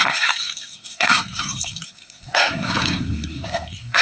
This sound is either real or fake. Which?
fake